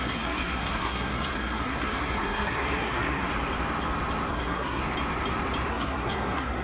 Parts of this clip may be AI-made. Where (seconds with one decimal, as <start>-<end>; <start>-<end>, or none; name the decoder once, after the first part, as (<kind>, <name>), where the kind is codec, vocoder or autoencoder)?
0.0-3.3 (codec, SNAC); 4.3-4.8; 5.7-6.6